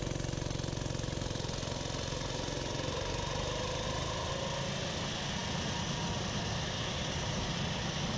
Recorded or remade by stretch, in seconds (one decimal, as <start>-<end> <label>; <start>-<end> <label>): 0.0-8.2 recorded